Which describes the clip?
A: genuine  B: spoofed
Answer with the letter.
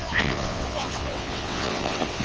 B